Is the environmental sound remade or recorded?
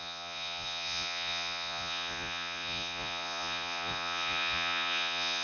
remade